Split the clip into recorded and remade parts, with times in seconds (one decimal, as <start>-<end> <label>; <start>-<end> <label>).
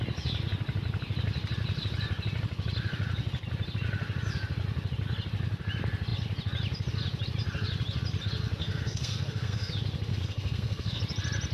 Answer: 0.0-8.6 recorded; 8.6-9.7 remade; 9.7-10.1 recorded; 10.1-11.0 remade; 11.0-11.5 recorded